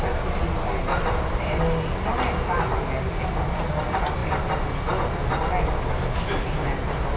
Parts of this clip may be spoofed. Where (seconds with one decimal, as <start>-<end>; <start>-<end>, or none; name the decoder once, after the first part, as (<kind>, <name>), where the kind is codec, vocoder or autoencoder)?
0.9-1.6 (vocoder, BigVGAN v2)